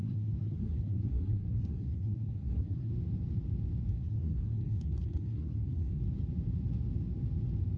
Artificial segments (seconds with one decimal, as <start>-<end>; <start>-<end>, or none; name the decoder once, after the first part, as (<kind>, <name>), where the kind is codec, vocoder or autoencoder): 0.0-2.9 (codec, SNAC); 3.9-6.0